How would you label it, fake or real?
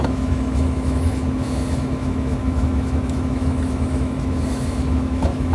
fake